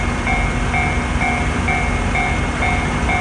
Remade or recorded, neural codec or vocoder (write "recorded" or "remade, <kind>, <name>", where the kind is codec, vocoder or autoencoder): recorded